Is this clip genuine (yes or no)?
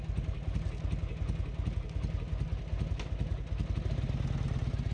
yes